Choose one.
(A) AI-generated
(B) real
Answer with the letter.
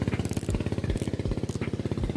B